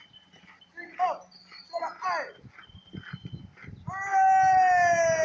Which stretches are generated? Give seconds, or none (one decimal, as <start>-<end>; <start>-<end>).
none